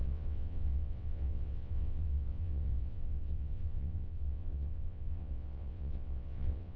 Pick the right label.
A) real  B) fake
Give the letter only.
B